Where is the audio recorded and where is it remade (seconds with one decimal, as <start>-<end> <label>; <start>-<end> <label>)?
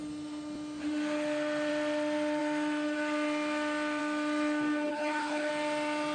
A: 0.0-4.9 recorded; 4.9-5.5 remade; 5.5-6.1 recorded